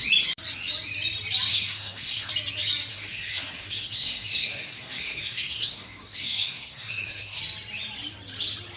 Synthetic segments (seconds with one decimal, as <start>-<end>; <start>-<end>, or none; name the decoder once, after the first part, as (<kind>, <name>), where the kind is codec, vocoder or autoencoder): 1.5-2.3 (codec, SNAC); 2.9-7.4